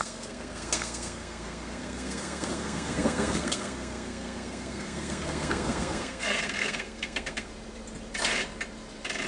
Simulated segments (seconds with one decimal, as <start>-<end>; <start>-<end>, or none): 0.0-7.5